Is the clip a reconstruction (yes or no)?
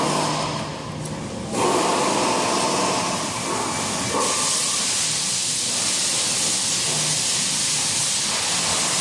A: no